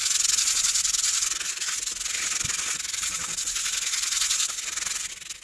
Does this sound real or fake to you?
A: real